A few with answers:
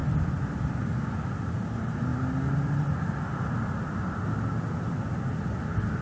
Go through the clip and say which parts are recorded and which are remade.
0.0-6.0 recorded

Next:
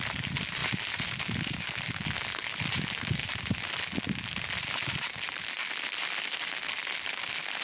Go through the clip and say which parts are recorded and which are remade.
0.0-0.6 recorded; 0.6-1.2 remade; 1.2-3.2 recorded; 3.2-3.7 remade; 3.7-4.8 recorded; 4.8-5.4 remade; 5.4-7.6 recorded

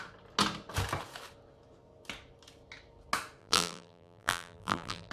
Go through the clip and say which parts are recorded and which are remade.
0.0-3.4 recorded; 3.4-5.1 remade

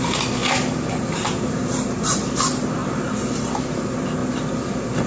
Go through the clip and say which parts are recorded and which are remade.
0.0-0.4 recorded; 0.4-2.4 remade; 2.4-2.8 recorded; 2.8-3.6 remade; 3.6-4.2 recorded; 4.2-5.1 remade